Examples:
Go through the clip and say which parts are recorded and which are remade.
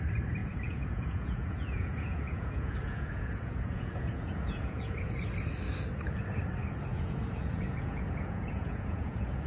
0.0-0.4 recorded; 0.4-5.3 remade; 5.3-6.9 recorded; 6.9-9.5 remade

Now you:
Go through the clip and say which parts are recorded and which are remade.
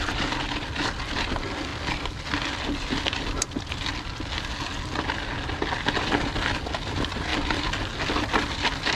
0.0-9.0 recorded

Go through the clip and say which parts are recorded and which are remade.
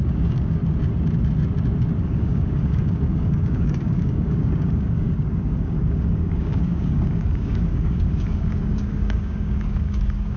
0.0-0.6 remade; 0.6-2.0 recorded; 2.0-10.4 remade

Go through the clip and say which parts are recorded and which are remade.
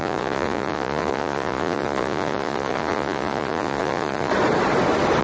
0.0-4.3 remade; 4.3-5.2 recorded